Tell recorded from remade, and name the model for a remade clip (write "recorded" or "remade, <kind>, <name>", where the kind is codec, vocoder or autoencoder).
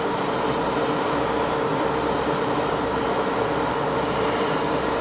recorded